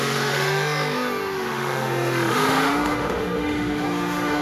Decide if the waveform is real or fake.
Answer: fake